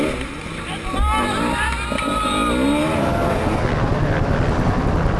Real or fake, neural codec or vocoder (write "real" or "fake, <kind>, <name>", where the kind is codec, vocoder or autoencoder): real